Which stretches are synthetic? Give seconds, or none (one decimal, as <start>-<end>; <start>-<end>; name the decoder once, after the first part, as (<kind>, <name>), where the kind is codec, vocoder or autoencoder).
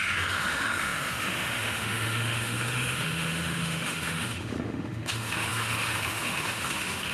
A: 0.0-7.1 (autoencoder, DAC-VAE)